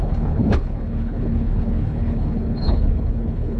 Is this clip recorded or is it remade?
remade